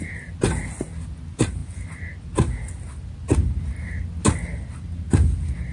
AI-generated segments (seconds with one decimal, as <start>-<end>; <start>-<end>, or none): none